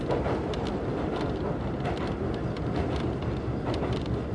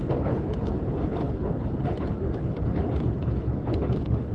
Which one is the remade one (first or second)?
second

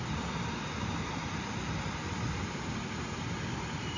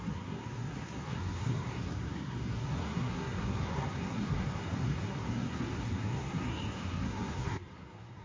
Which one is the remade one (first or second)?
second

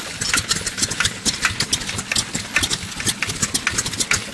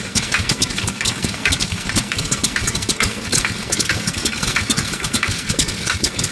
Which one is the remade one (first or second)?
second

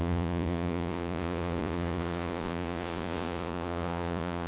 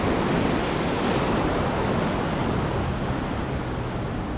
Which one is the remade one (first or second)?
first